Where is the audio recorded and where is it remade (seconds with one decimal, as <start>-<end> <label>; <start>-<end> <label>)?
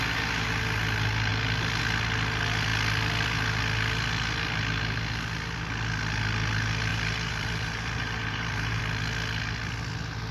0.0-6.9 recorded; 6.9-8.8 remade; 8.8-10.3 recorded